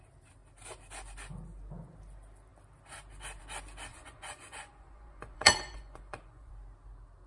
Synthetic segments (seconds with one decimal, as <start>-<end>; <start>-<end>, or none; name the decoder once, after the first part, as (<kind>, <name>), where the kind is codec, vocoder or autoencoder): 3.9-6.5 (vocoder, Vocos)